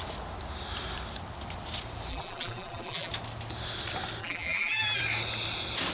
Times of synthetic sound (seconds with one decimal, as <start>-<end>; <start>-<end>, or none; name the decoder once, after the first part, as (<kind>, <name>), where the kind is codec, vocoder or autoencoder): 2.1-3.1 (vocoder, BigVGAN v2); 4.2-5.0